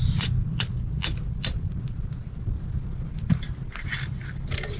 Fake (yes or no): no